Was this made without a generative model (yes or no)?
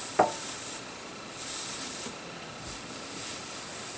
yes